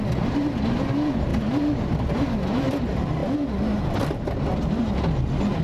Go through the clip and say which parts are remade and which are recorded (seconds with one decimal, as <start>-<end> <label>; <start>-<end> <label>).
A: 0.0-5.6 recorded